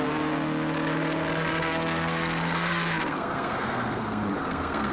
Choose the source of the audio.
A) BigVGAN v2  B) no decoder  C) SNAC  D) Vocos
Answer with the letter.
C